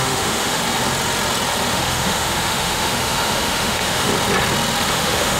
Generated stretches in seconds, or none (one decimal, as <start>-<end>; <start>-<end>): 0.0-0.6; 1.7-4.1; 4.9-5.4